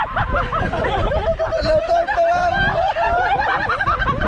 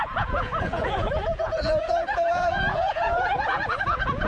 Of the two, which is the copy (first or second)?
second